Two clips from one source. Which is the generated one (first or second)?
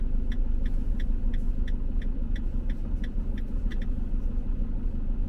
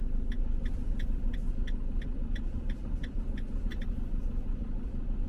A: second